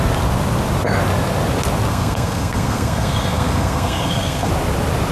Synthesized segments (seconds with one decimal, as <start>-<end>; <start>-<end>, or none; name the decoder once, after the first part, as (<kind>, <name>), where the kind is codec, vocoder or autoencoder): 1.9-4.5 (codec, SNAC)